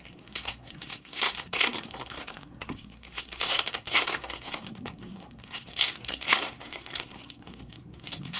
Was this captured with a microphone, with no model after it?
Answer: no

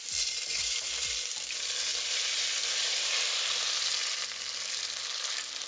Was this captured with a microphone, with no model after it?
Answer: no